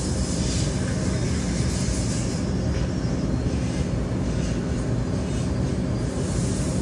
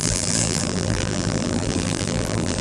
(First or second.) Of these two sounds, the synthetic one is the second